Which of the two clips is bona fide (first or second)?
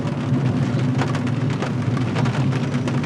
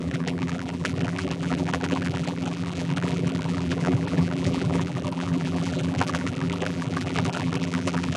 first